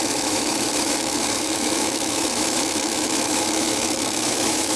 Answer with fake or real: fake